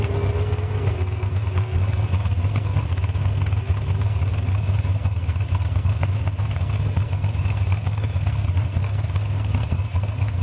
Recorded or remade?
remade